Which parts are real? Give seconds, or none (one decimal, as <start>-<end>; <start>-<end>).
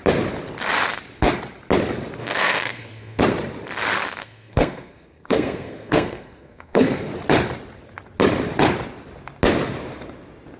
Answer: 0.0-2.2; 3.2-4.2; 7.1-10.6